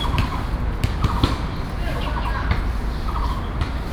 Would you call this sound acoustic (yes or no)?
yes